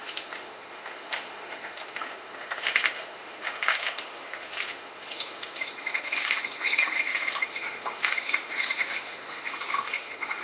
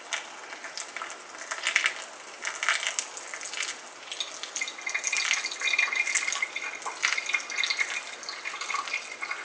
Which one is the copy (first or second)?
first